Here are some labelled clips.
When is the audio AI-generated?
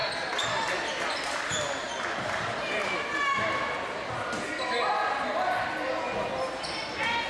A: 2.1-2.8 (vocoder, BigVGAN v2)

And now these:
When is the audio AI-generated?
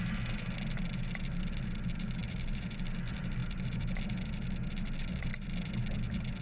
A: 2.2-2.8 (vocoder, BigVGAN v2); 3.4-4.0; 5.3-5.8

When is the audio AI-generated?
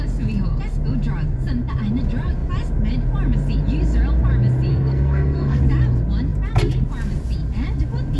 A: 4.7-5.6 (codec, SNAC)